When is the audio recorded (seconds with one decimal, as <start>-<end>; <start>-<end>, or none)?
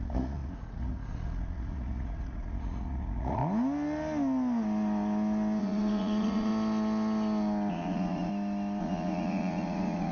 3.4-5.6; 6.5-7.7; 8.3-8.8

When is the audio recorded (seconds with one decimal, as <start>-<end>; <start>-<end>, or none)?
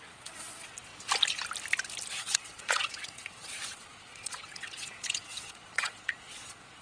0.9-2.1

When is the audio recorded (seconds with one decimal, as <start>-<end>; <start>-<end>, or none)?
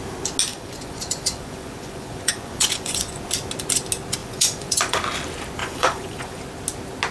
0.0-0.5; 3.2-4.2; 5.0-5.6; 6.4-7.1